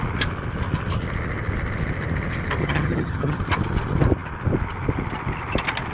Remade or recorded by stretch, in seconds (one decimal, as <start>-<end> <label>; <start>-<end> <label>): 0.0-2.6 recorded; 2.6-3.4 remade; 3.4-5.9 recorded